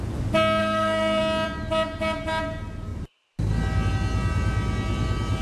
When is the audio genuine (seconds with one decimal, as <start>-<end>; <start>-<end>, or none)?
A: 0.0-0.6; 1.2-5.4